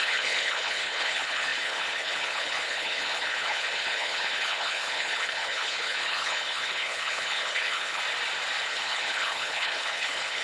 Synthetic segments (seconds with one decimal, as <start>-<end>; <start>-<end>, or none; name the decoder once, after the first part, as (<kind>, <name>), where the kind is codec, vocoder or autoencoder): 0.0-8.0 (codec, HILCodec); 8.7-10.4